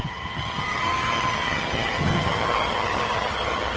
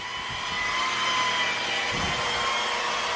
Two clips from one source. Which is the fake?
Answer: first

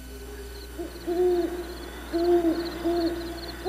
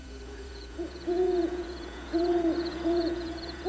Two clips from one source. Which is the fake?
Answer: second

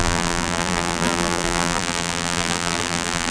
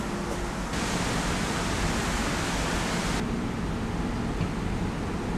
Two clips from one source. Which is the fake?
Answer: first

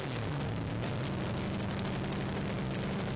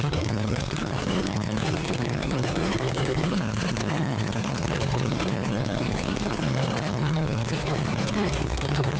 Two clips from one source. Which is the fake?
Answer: second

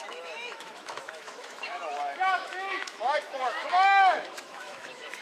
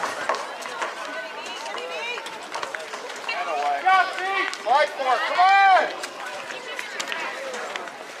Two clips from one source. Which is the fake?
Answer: first